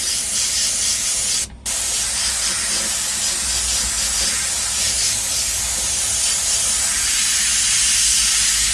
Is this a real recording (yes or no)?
yes